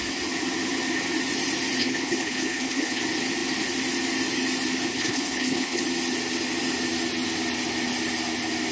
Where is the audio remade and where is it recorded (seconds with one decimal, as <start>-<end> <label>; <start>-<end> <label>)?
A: 0.0-1.8 recorded; 1.8-3.0 remade; 3.0-4.9 recorded; 4.9-5.8 remade; 5.8-8.7 recorded